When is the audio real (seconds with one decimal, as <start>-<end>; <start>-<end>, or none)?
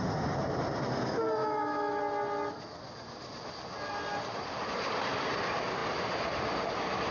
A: 0.0-1.4; 2.0-7.1